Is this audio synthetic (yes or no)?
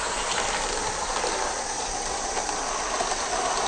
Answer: no